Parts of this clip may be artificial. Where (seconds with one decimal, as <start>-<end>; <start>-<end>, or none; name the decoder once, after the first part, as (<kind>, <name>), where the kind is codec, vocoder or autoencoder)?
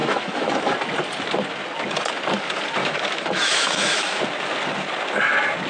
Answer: 0.0-0.7 (autoencoder, DAC-VAE); 2.8-4.2